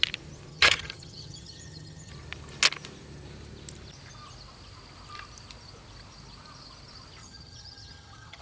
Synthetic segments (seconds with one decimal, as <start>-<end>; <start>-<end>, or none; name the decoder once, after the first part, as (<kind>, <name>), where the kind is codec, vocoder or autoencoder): 0.5-2.1 (vocoder, HiFi-GAN); 7.2-8.4

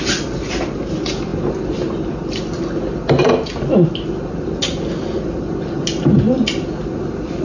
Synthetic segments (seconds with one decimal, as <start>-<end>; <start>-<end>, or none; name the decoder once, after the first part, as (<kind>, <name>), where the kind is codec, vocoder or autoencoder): none

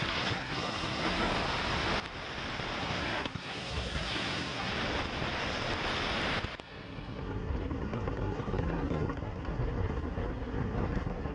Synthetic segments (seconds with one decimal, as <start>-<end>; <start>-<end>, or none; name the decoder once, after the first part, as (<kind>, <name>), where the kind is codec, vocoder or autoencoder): 0.0-1.3 (codec, SNAC); 2.8-4.7; 6.6-11.3

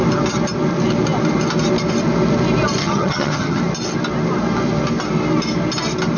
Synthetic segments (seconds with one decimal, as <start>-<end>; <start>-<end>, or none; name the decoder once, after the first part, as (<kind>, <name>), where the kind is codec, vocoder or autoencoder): 2.8-3.6 (vocoder, HiFi-GAN)

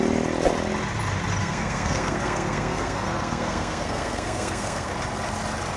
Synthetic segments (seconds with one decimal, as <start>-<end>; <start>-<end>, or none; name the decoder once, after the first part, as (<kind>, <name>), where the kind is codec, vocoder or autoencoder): 1.4-4.9 (codec, SNAC)

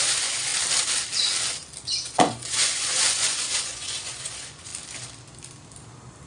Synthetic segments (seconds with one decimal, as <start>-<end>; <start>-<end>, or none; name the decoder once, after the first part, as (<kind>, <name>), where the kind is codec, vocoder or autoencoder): 0.0-0.5 (vocoder, Vocos); 2.0-4.7

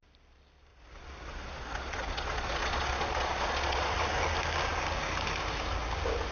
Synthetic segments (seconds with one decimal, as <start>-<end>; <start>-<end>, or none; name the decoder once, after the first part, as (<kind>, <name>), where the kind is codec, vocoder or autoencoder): 0.7-4.1 (vocoder, Vocos)

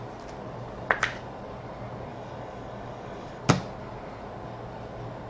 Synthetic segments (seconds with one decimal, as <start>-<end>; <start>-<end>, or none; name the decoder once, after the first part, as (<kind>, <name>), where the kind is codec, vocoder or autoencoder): 2.1-3.4 (codec, DAC)